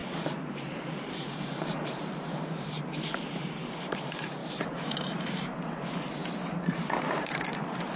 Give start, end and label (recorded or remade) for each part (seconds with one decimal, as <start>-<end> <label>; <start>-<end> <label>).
0.0-8.0 remade